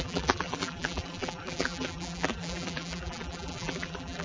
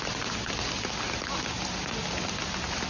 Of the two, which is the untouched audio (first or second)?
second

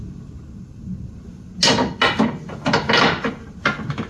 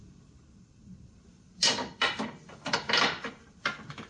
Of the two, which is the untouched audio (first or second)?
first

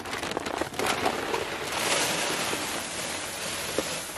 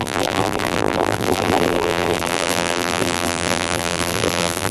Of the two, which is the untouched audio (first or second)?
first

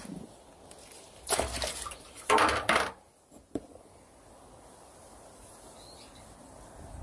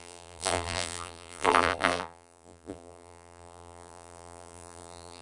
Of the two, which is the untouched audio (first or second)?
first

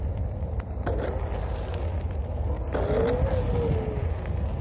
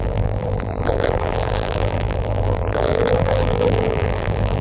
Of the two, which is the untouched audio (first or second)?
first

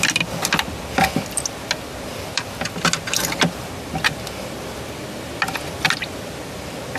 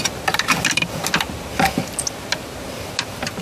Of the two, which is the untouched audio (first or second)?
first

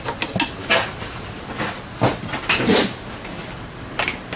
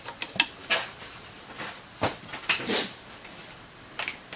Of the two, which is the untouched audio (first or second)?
first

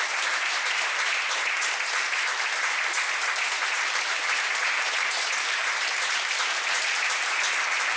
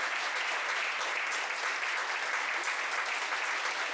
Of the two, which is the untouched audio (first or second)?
second